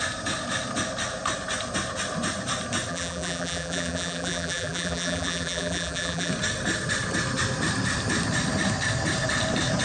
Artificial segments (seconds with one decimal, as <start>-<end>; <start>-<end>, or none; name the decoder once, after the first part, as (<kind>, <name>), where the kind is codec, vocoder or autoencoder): 2.9-6.3 (vocoder, BigVGAN v2)